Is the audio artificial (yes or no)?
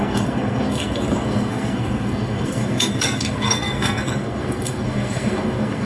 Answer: yes